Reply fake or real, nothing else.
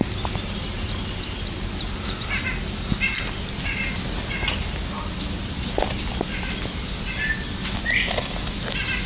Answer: real